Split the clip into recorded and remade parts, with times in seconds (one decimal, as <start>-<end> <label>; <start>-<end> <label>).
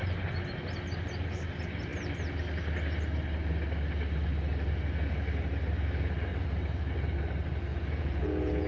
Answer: 0.0-7.7 recorded; 7.7-8.7 remade